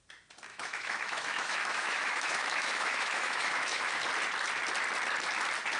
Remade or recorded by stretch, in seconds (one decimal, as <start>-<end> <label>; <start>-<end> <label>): 0.0-0.5 recorded; 0.5-4.0 remade; 4.0-5.8 recorded